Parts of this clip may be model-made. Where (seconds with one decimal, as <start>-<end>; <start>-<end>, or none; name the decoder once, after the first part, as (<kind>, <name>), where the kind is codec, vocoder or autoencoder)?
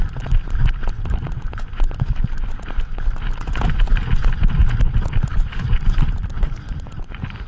4.6-7.5 (vocoder, BigVGAN v2)